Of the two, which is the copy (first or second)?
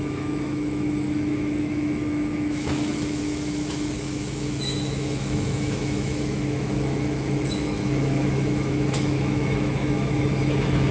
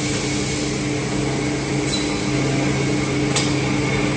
first